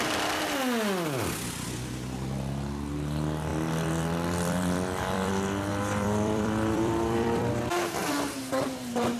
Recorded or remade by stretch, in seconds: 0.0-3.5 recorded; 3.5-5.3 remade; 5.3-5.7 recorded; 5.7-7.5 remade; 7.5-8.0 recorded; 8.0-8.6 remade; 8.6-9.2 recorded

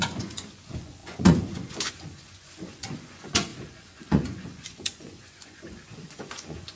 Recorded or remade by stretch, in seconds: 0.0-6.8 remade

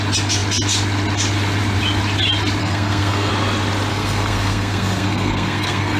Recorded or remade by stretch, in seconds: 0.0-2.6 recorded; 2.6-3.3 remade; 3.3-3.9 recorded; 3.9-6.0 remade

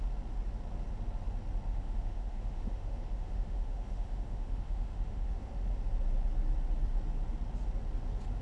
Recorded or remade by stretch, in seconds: 0.0-1.7 recorded; 1.7-5.5 remade; 5.5-8.4 recorded

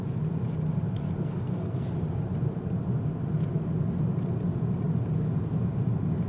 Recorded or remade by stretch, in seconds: 0.0-1.2 recorded; 1.2-1.9 remade; 1.9-6.3 recorded

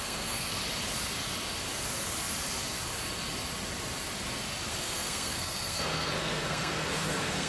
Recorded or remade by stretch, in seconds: 0.0-0.6 remade; 0.6-4.7 recorded; 4.7-7.5 remade